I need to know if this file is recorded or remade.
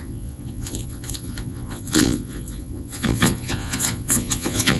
remade